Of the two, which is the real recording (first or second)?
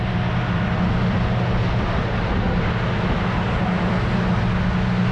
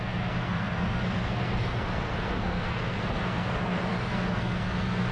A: first